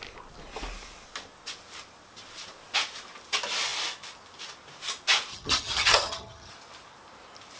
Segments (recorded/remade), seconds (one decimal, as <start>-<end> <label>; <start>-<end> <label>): 0.0-5.3 recorded; 5.3-6.5 remade; 6.5-7.6 recorded